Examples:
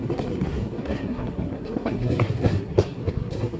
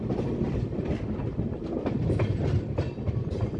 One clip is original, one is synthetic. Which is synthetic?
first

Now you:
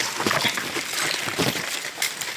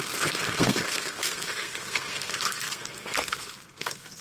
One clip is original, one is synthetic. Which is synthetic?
second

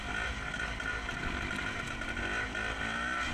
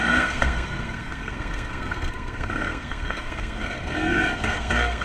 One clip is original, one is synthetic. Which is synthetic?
second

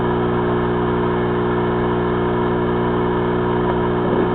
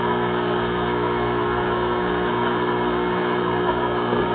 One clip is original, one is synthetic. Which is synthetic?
second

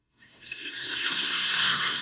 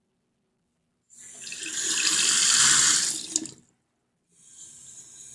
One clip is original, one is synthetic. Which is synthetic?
first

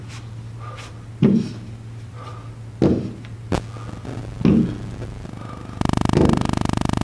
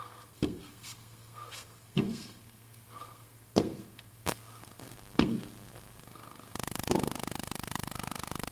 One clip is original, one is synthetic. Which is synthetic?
second